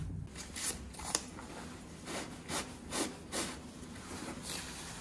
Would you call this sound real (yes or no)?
yes